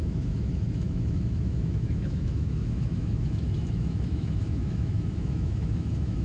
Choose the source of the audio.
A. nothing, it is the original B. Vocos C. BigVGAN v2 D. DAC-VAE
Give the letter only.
D